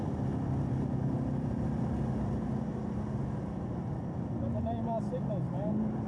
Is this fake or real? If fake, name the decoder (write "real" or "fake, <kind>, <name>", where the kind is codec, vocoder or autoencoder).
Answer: real